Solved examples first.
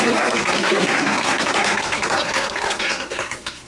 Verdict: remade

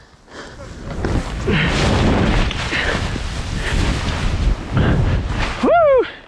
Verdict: recorded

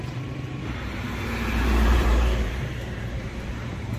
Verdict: remade